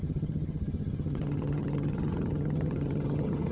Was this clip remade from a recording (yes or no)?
yes